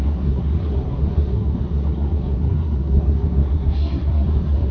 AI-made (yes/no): yes